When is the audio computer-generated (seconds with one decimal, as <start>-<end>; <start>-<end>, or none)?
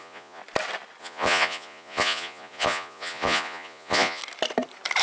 0.0-0.4; 1.0-4.2